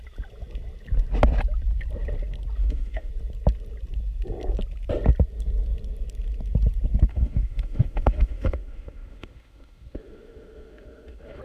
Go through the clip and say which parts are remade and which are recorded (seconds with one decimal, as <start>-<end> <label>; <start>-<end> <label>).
0.0-2.6 recorded; 2.6-3.1 remade; 3.1-7.1 recorded; 7.1-11.4 remade